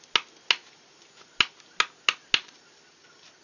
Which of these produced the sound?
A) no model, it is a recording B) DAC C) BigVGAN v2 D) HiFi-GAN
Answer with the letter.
A